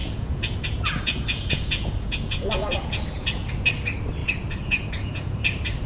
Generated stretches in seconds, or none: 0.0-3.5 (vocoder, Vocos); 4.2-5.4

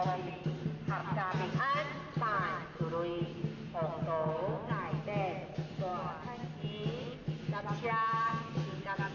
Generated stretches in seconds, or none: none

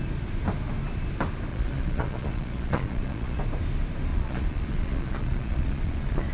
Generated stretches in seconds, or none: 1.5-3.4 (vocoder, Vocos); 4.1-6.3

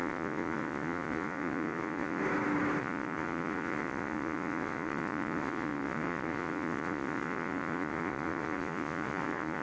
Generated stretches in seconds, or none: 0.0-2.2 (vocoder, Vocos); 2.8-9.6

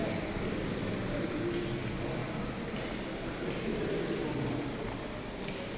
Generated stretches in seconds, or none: none

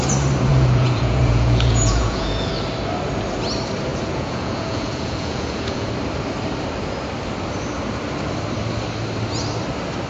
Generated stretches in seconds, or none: 0.5-2.5 (vocoder, Vocos); 3.9-5.9

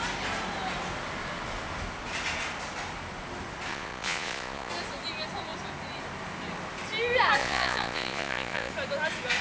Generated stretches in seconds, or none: 3.7-4.7 (vocoder, Vocos); 7.4-8.7

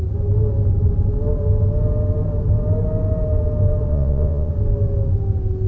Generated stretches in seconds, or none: 3.9-4.5 (vocoder, Vocos)